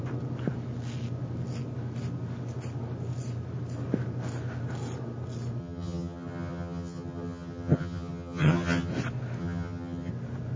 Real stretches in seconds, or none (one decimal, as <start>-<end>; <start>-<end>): 0.0-5.6; 8.9-9.4; 10.1-10.6